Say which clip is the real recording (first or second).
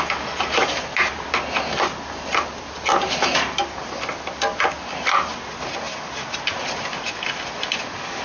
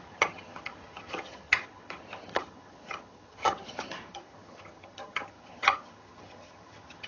first